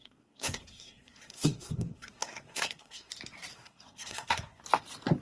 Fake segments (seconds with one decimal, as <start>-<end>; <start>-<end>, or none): 0.0-3.1; 3.5-4.6